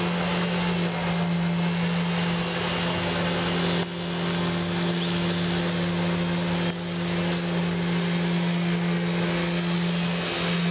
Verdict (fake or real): real